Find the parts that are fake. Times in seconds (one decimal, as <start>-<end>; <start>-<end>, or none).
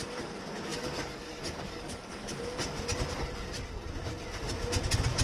0.7-2.4